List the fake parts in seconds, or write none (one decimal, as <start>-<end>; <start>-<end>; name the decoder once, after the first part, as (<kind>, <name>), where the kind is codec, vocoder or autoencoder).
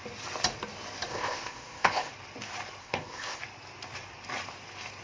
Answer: 1.1-2.1 (codec, ZipCodec); 2.8-3.4